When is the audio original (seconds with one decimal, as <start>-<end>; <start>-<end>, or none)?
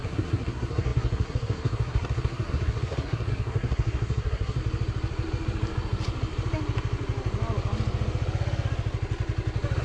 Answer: 4.6-9.8